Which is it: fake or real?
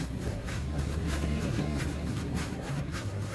fake